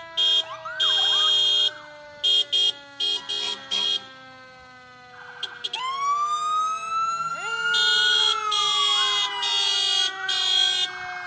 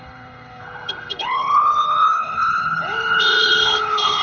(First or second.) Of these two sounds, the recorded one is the first